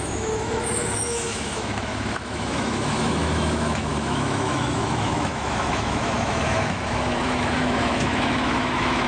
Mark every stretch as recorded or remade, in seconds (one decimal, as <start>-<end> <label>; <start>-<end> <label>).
0.0-9.1 remade